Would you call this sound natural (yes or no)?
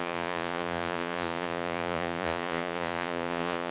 no